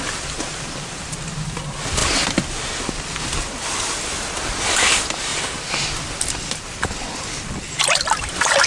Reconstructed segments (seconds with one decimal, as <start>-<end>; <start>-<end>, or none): 0.0-8.7